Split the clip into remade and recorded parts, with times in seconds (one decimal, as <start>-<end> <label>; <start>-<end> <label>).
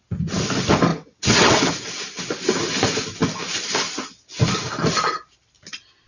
0.0-0.9 recorded; 0.9-1.7 remade; 1.7-6.1 recorded